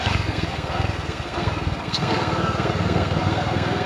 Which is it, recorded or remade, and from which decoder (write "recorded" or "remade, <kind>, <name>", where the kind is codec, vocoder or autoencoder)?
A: remade, codec, SNAC